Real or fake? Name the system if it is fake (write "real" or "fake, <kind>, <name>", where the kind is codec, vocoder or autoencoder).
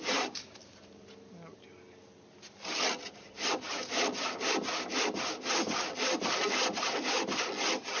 real